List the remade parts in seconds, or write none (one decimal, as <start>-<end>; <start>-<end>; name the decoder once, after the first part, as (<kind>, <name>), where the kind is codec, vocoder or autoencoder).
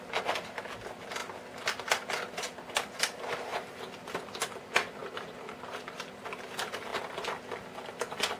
none